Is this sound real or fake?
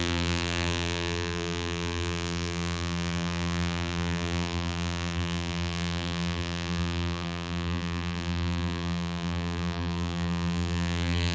fake